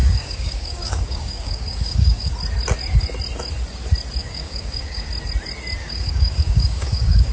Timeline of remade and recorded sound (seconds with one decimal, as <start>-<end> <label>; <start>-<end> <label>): 0.0-2.3 remade; 2.3-4.2 recorded; 4.2-5.1 remade; 5.1-5.8 recorded; 5.8-7.3 remade